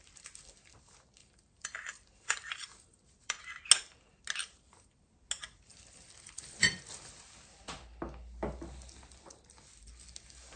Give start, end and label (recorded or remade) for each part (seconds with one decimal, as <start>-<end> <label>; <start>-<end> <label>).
0.0-1.2 recorded; 1.2-3.4 remade; 3.4-4.4 recorded; 4.4-5.1 remade; 5.1-5.7 recorded; 5.7-7.1 remade; 7.1-10.6 recorded